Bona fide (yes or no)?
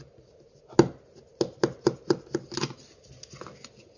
yes